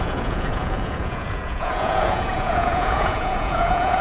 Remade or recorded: remade